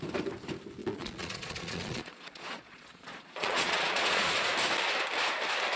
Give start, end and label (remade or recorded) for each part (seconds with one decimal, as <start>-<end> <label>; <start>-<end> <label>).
0.0-0.8 recorded; 0.8-4.3 remade; 4.3-5.8 recorded